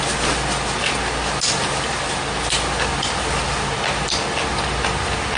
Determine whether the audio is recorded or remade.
recorded